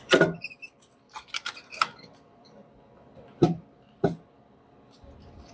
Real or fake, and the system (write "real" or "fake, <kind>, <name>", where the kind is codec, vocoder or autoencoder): real